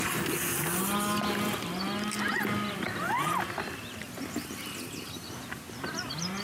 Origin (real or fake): real